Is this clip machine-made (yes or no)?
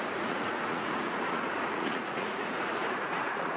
yes